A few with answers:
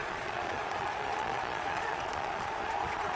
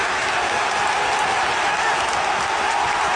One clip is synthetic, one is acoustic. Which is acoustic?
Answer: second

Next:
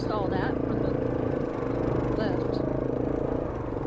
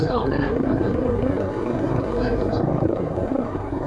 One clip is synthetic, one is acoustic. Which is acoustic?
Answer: first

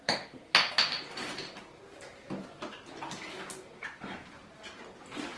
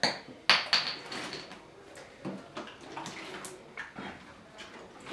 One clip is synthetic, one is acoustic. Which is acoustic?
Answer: second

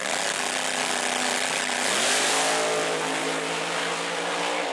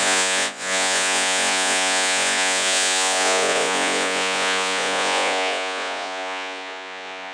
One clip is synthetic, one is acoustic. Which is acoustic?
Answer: first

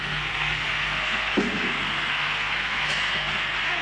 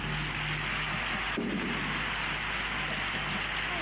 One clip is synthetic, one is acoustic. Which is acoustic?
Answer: second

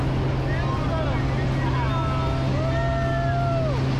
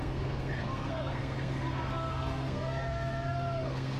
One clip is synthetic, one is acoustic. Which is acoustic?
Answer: first